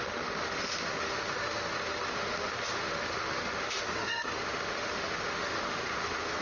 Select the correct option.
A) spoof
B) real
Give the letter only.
A